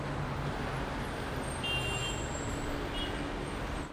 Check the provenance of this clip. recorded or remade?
recorded